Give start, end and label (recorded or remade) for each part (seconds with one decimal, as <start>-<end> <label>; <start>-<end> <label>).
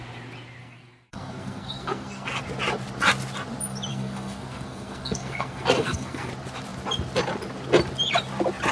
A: 0.0-0.6 recorded; 0.6-2.4 remade; 2.4-3.9 recorded; 3.9-6.3 remade; 6.3-8.7 recorded